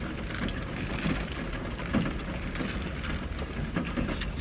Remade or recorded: recorded